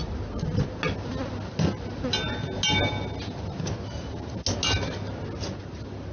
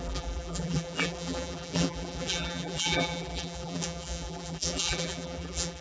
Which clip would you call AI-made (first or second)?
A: second